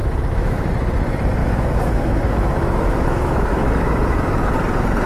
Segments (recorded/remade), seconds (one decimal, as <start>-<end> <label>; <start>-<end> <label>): 0.0-0.7 remade; 0.7-1.4 recorded; 1.4-4.5 remade; 4.5-5.1 recorded